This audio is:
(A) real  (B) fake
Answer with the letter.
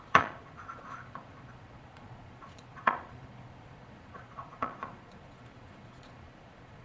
B